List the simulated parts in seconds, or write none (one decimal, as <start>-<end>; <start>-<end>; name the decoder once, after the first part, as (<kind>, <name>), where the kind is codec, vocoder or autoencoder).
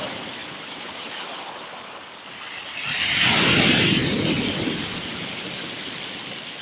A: none